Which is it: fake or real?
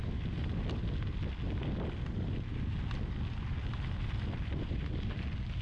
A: real